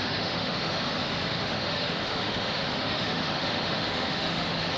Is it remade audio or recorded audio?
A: remade